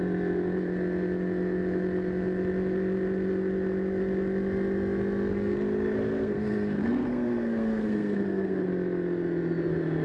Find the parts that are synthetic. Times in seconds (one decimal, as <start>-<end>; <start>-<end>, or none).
5.3-8.7